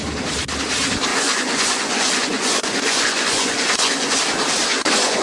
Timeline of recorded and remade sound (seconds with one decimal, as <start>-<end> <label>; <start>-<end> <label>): 0.0-1.1 recorded; 1.1-4.2 remade; 4.2-4.7 recorded; 4.7-5.2 remade